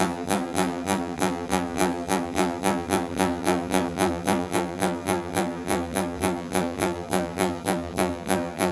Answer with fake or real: fake